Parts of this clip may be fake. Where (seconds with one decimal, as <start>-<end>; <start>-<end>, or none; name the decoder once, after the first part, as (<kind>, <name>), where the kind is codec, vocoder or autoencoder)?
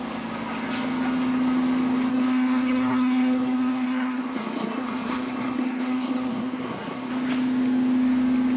2.1-7.1 (codec, SNAC)